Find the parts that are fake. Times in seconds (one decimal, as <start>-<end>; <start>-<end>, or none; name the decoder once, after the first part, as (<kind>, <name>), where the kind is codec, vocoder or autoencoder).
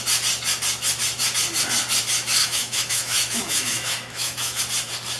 2.4-4.6 (autoencoder, DAC-VAE)